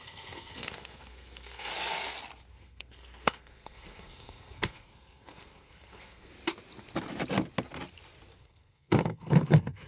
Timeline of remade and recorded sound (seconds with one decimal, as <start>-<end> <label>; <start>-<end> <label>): 0.0-1.7 remade; 1.7-2.5 recorded; 2.5-6.3 remade; 6.3-8.4 recorded; 8.4-9.9 remade

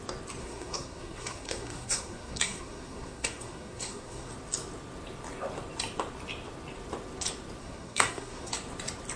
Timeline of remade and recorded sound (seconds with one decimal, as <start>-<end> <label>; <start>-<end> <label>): 0.0-0.4 recorded; 0.4-4.3 remade; 4.3-7.6 recorded; 7.6-8.5 remade; 8.5-9.2 recorded

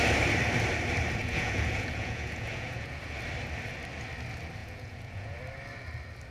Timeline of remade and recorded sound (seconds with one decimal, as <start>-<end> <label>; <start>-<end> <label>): 0.0-1.2 recorded; 1.2-3.0 remade; 3.0-4.6 recorded; 4.6-5.4 remade; 5.4-6.3 recorded

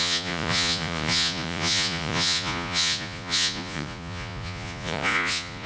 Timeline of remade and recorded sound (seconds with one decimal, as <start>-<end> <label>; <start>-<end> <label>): 0.0-5.7 remade

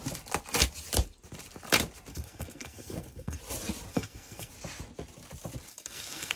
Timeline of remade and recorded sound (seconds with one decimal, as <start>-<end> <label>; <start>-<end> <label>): 0.0-2.1 recorded; 2.1-3.4 remade; 3.4-3.9 recorded; 3.9-4.5 remade; 4.5-5.7 recorded; 5.7-6.4 remade

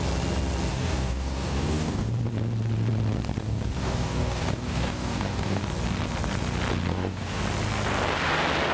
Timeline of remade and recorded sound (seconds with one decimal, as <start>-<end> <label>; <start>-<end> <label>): 0.0-0.7 recorded; 0.7-2.1 remade; 2.1-3.4 recorded; 3.4-5.6 remade; 5.6-6.9 recorded; 6.9-7.4 remade; 7.4-8.7 recorded